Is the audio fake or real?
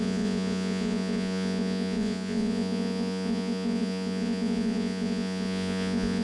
fake